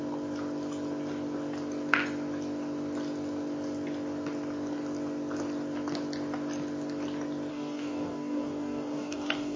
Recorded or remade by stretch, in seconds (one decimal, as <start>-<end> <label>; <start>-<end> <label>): 0.0-7.5 recorded; 7.5-9.6 remade